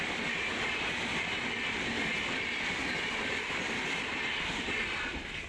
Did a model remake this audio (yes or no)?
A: no